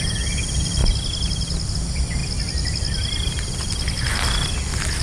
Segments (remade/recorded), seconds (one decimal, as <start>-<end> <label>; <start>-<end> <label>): 0.0-5.0 recorded